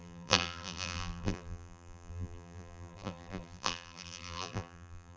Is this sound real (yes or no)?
no